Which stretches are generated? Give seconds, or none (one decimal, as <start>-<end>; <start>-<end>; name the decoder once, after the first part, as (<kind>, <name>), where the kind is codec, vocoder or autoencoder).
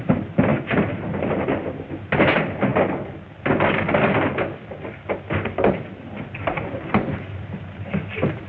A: 0.0-2.7 (vocoder, BigVGAN v2); 6.4-8.5